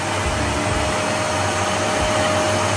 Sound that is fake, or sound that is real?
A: real